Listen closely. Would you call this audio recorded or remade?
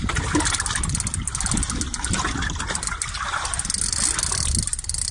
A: recorded